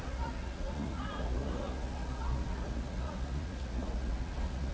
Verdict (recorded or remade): remade